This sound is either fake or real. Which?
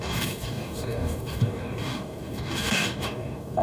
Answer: fake